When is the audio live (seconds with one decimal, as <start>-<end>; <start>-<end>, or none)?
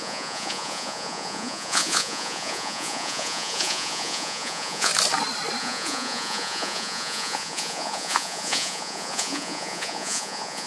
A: 4.9-5.6